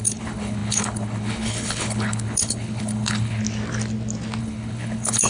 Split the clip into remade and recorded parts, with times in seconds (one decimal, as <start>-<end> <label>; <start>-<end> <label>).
0.0-3.4 remade; 3.4-4.4 recorded; 4.4-5.3 remade